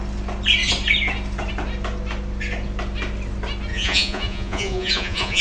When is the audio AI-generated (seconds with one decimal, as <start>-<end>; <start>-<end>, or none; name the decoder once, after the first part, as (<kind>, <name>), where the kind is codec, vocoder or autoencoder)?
3.7-5.4 (vocoder, Vocos)

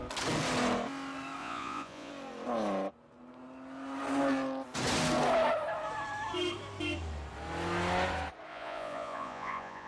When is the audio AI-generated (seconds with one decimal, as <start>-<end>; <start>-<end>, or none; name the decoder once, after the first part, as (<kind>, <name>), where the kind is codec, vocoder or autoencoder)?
1.4-2.1 (vocoder, Vocos); 8.5-9.9

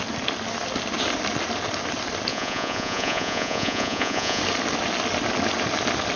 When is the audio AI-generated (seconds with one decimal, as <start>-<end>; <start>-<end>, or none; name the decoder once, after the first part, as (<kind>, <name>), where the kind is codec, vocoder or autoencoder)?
2.3-4.4 (vocoder, Vocos)

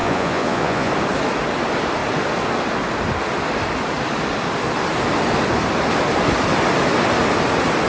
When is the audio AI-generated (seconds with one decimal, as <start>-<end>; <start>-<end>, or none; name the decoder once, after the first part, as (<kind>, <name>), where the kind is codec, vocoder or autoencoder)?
0.0-0.9 (vocoder, Vocos)